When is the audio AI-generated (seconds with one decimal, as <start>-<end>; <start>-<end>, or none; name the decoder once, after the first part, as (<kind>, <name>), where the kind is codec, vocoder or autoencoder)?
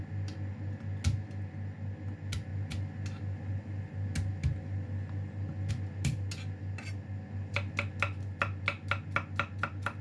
none